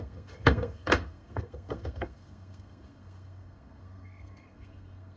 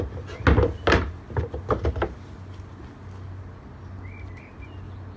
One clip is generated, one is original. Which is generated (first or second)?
first